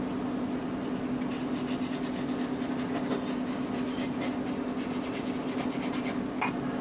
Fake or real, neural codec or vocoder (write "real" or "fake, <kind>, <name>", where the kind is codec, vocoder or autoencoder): real